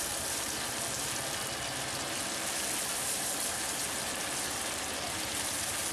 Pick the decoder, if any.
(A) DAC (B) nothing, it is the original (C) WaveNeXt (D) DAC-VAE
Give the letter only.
B